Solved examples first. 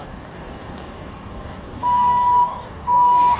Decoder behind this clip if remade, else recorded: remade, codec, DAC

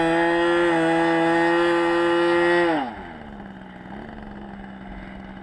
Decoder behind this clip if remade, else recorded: recorded